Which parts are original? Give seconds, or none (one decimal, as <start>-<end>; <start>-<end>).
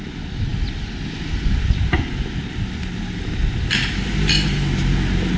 0.0-5.4